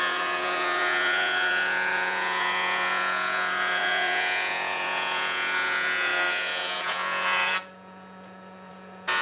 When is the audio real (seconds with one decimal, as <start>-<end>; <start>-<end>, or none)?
none